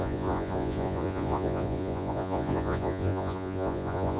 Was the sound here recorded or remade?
remade